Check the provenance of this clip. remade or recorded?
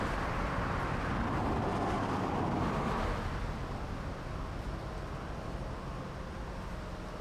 recorded